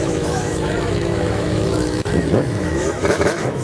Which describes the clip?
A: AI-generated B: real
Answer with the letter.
A